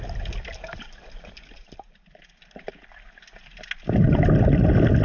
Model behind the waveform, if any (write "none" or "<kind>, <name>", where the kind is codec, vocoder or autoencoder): none